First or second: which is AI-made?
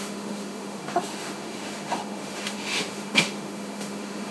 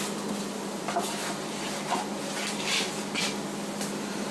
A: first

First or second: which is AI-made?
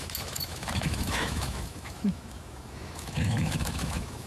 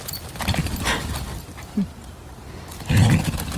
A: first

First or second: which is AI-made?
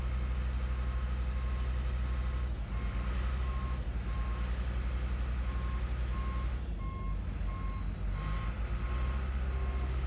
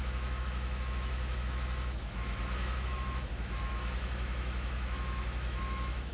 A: second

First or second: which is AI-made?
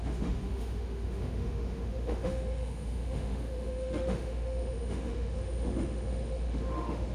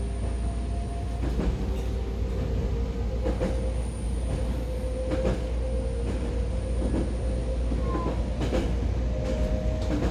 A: first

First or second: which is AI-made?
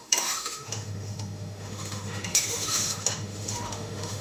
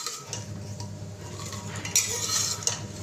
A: first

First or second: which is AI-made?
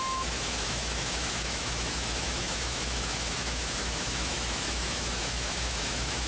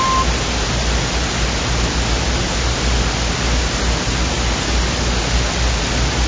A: first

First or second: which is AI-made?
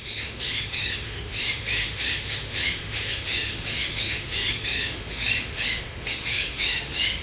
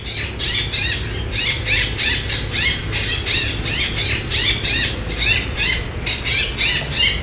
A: first